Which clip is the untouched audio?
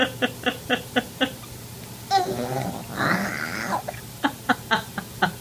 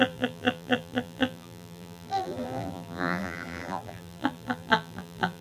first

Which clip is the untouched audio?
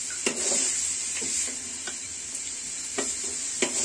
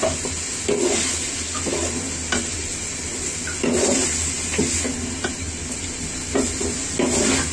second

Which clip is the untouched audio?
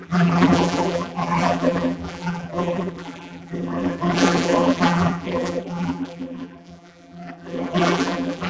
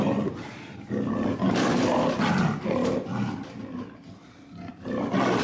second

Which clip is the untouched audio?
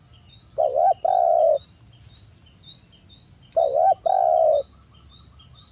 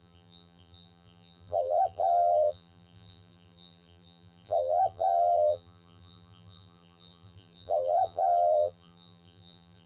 first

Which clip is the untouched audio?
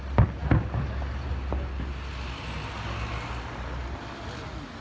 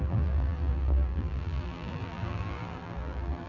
first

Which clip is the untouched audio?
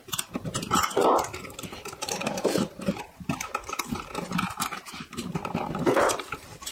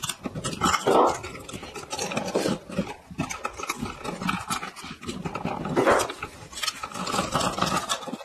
second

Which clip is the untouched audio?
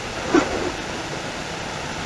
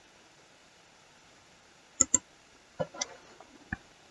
first